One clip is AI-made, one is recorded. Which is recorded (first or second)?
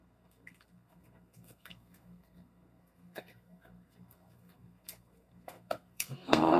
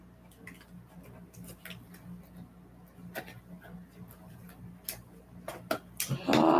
second